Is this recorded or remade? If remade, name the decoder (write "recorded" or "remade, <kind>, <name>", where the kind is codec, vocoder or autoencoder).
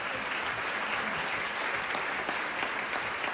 recorded